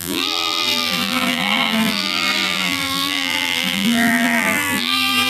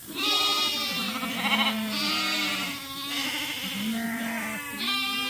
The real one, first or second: second